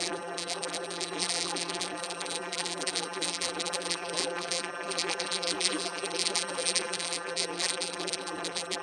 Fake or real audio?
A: fake